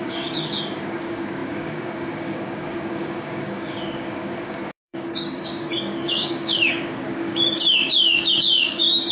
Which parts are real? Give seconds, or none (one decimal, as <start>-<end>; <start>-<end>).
none